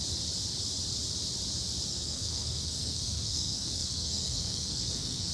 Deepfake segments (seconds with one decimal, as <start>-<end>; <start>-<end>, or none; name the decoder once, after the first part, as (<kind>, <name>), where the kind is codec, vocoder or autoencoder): 1.9-5.3 (codec, SNAC)